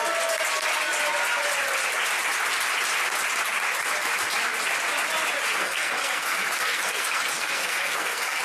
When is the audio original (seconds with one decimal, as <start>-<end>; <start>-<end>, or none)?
0.0-5.6